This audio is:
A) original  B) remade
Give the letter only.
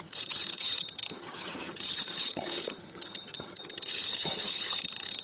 B